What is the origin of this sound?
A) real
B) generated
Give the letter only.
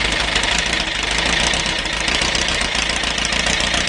A